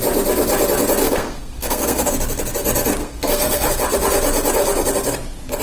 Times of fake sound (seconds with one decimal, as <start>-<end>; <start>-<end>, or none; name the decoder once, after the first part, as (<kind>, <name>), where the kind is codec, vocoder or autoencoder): 1.0-2.1 (codec, SNAC); 3.0-3.7